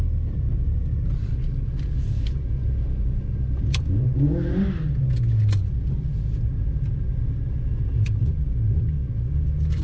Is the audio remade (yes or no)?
no